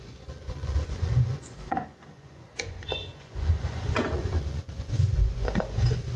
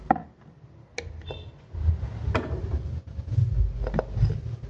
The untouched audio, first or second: second